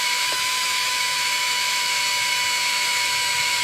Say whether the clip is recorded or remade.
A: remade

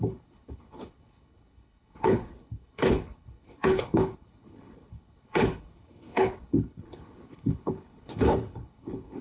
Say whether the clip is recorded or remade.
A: remade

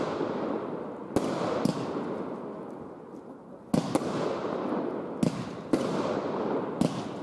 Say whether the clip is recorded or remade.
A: recorded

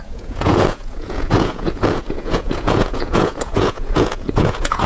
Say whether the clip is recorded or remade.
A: remade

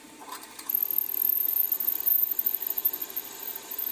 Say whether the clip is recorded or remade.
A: recorded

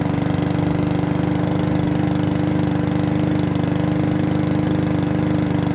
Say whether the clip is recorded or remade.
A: recorded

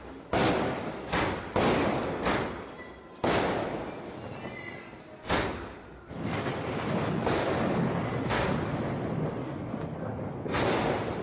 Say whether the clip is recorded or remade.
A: recorded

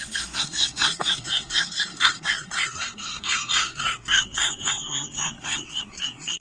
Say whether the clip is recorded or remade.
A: remade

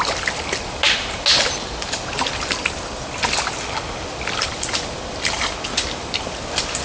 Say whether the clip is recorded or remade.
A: recorded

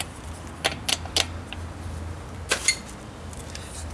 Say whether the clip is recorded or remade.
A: recorded